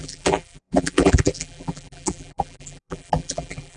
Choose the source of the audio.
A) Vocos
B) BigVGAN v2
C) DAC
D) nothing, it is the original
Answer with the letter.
B